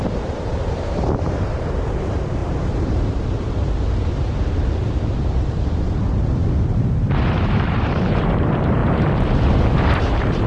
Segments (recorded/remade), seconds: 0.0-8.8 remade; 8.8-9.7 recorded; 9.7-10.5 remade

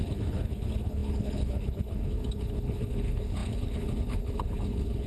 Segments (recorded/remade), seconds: 0.0-5.1 remade